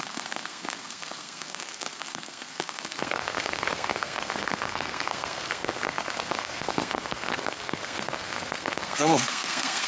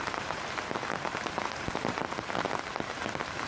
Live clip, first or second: second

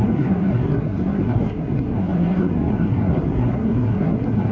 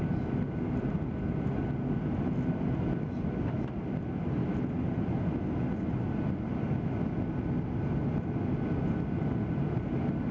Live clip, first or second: second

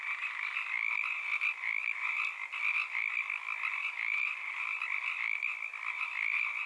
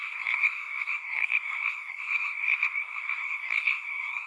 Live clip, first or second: first